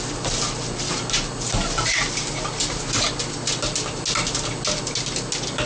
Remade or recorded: recorded